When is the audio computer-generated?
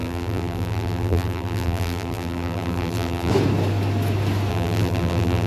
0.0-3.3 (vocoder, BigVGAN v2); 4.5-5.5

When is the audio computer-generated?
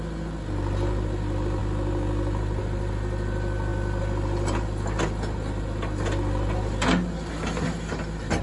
none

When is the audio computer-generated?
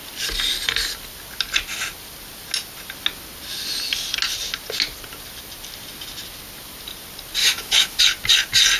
7.4-8.0 (autoencoder, DAC-VAE)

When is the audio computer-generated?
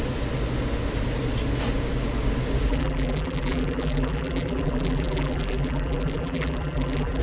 2.7-7.2 (vocoder, BigVGAN v2)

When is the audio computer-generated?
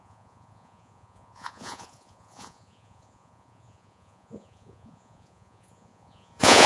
0.0-6.7 (vocoder, Vocos)